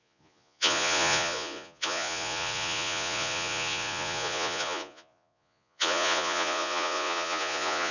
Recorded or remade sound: remade